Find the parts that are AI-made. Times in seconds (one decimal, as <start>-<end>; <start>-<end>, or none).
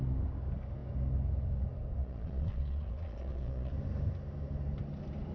2.0-3.7